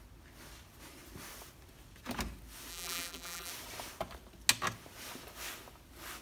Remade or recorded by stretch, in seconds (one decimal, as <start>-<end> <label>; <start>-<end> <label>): 0.0-2.7 recorded; 2.7-3.5 remade; 3.5-6.2 recorded